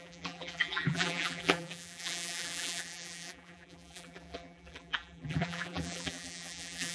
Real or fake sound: fake